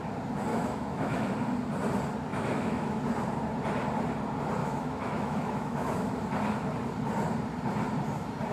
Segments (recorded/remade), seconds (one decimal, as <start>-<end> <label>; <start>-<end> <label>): 0.0-0.5 recorded; 0.5-1.3 remade; 1.3-2.3 recorded; 2.3-3.0 remade; 3.0-4.6 recorded; 4.6-6.1 remade; 6.1-8.5 recorded